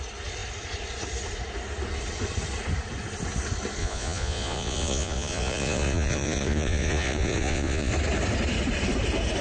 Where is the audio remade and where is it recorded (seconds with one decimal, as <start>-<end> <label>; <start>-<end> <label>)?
0.0-3.8 recorded; 3.8-7.9 remade; 7.9-9.4 recorded

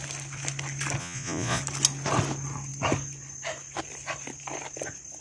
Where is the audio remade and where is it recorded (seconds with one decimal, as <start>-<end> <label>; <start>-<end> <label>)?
0.0-1.0 recorded; 1.0-1.6 remade; 1.6-5.2 recorded

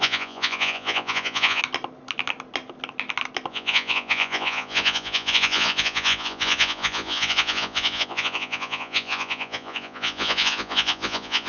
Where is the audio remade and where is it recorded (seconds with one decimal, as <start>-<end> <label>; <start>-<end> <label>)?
0.0-1.6 remade; 1.6-3.5 recorded; 3.5-11.5 remade

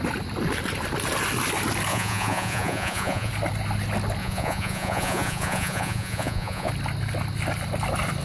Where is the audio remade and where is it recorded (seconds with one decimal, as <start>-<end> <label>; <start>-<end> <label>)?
0.0-1.9 recorded; 1.9-3.3 remade; 3.3-4.2 recorded; 4.2-6.7 remade; 6.7-8.2 recorded

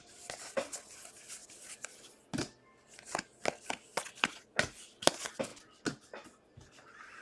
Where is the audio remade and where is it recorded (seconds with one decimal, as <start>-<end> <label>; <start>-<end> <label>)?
0.0-7.2 recorded